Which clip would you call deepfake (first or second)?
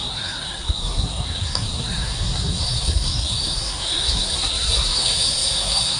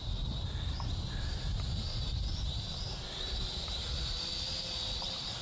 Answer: first